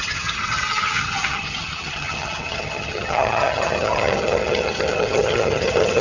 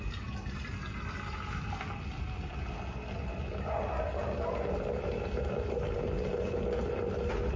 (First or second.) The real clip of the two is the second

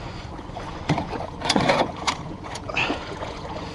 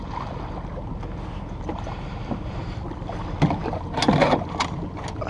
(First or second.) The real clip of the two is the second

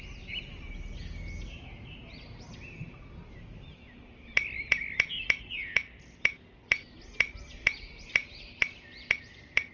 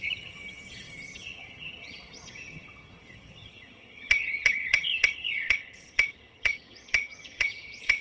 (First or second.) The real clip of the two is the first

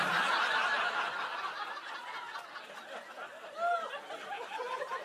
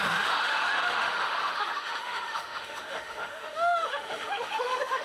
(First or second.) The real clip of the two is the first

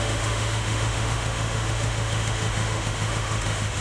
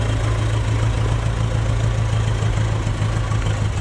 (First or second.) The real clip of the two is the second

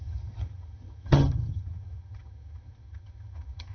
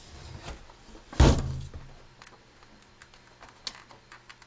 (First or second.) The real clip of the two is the second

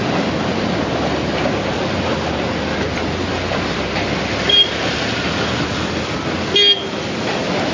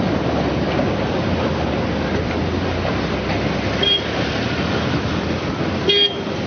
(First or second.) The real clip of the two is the first